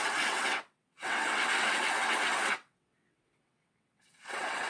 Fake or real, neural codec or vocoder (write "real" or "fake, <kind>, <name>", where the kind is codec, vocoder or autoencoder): fake, vocoder, WaveNeXt